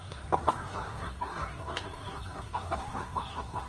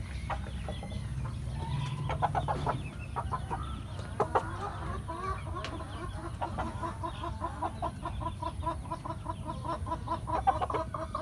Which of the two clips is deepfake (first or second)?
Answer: first